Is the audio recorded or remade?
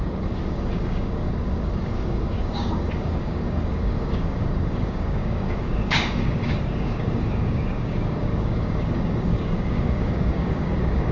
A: remade